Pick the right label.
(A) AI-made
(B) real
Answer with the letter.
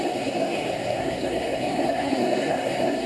A